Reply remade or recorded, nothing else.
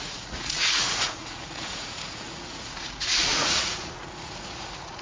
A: remade